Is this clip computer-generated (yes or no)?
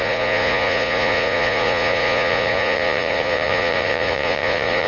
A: yes